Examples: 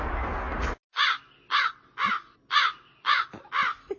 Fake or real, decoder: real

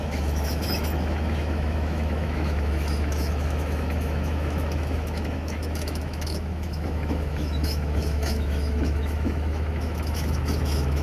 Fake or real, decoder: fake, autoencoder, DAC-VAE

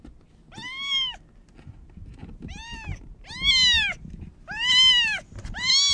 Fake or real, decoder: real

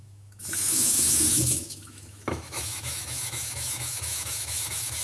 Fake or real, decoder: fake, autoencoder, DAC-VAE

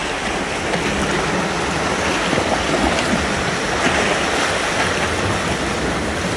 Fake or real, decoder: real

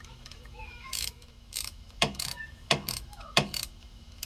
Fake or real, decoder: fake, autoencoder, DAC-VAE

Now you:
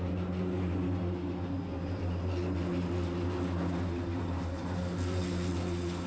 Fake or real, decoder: real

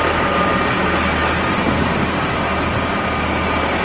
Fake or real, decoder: real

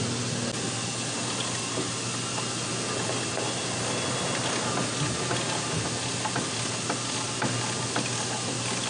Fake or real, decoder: real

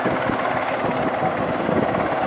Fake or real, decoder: real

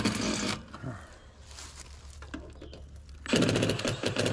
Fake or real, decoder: real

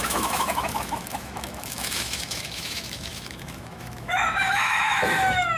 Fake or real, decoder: fake, autoencoder, DAC-VAE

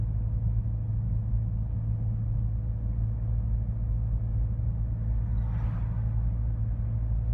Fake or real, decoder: real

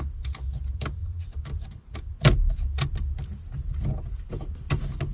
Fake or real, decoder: real